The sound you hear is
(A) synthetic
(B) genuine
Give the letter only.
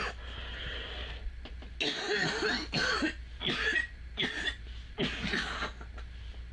B